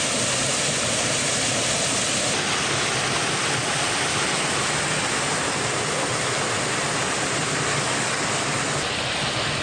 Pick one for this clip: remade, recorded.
recorded